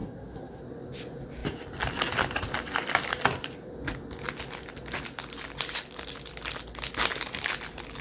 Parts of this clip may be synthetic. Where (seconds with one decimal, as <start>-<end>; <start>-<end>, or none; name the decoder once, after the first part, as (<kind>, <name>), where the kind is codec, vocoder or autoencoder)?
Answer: 0.0-0.6 (codec, SNAC)